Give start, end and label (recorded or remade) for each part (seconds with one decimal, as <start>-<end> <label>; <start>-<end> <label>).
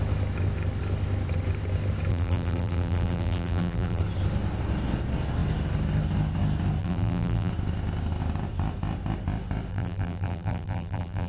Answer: 0.0-2.1 recorded; 2.1-4.0 remade; 4.0-6.8 recorded; 6.8-7.5 remade; 7.5-9.7 recorded; 9.7-11.3 remade